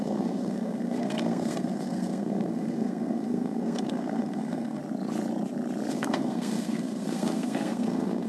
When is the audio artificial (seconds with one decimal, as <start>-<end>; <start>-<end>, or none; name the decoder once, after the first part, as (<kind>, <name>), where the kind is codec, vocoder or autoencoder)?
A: 0.0-4.8 (codec, SNAC); 5.9-8.3